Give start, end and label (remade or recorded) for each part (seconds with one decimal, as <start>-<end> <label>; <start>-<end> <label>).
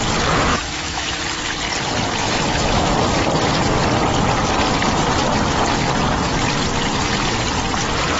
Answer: 0.0-0.5 recorded; 0.5-1.2 remade; 1.2-2.2 recorded; 2.2-2.9 remade; 2.9-8.2 recorded